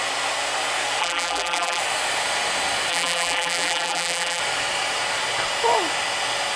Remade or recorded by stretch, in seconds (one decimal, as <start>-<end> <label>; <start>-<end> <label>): 0.0-1.0 recorded; 1.0-1.8 remade; 1.8-2.9 recorded; 2.9-4.4 remade; 4.4-6.6 recorded